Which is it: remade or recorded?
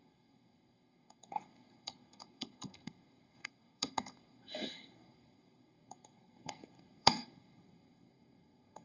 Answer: remade